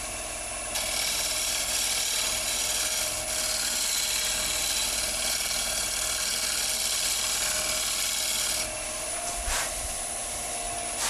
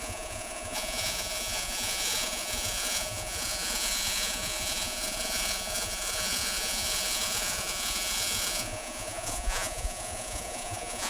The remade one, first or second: second